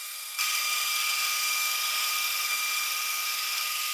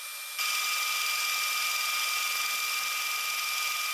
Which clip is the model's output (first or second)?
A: first